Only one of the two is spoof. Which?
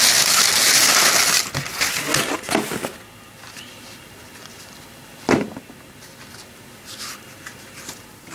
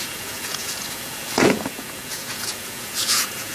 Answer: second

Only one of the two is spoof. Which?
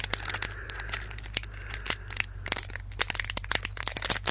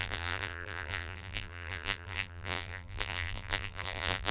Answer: second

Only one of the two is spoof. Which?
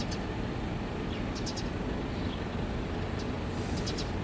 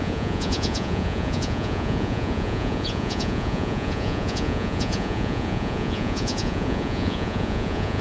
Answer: second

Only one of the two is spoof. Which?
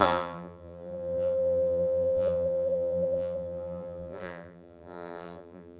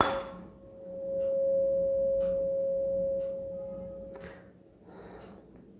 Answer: first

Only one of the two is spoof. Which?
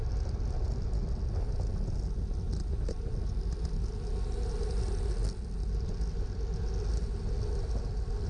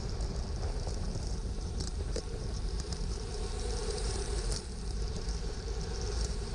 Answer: second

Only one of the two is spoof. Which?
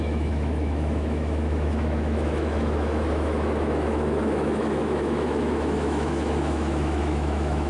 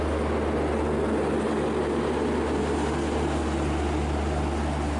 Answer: first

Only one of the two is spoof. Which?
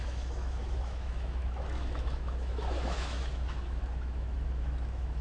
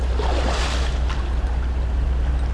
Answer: first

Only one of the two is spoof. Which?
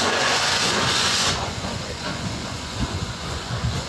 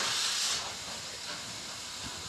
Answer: first